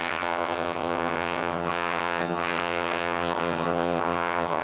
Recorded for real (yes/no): no